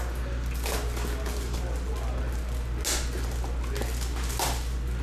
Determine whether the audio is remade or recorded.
recorded